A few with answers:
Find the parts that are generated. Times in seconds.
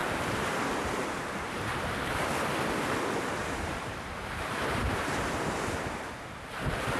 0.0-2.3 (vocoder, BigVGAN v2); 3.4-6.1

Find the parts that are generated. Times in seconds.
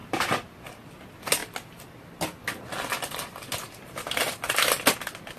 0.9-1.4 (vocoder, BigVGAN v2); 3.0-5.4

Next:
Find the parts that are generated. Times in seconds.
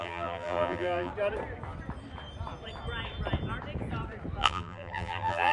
0.0-1.1 (vocoder, BigVGAN v2); 4.4-5.5